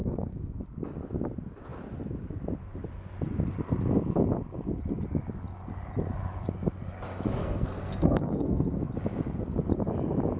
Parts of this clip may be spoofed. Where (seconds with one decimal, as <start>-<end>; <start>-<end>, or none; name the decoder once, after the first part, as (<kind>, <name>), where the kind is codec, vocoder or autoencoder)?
0.0-0.6 (codec, SNAC); 7.4-8.8